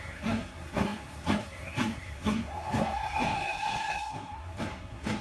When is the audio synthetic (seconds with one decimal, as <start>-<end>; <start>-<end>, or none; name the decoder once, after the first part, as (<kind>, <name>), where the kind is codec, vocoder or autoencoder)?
0.0-5.2 (codec, SNAC)